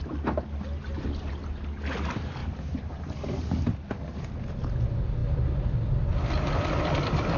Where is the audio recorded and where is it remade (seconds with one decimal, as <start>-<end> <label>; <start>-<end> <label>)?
0.0-7.4 recorded